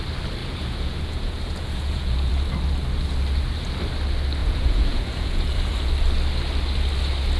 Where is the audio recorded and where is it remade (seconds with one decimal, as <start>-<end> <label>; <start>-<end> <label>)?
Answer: 0.0-0.4 recorded; 0.4-2.3 remade; 2.3-4.4 recorded; 4.4-5.9 remade; 5.9-7.4 recorded